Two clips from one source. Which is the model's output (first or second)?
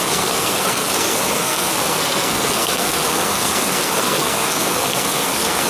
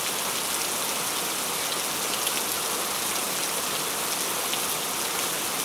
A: first